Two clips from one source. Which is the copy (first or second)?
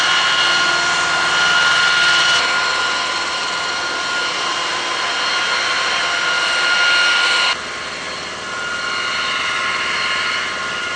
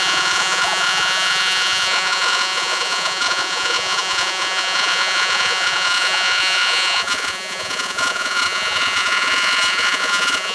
second